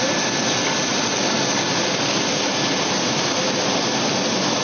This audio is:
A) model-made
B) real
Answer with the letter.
B